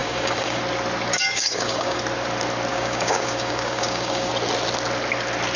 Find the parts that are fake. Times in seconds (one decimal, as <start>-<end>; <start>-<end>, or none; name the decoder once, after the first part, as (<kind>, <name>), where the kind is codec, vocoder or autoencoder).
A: 0.0-0.6 (codec, DAC); 1.1-2.0; 2.7-4.3